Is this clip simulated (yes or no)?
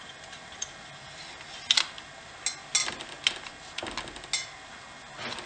no